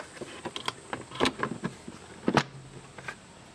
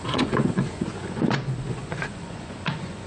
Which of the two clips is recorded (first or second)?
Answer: first